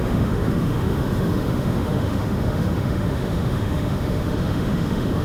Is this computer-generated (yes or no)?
yes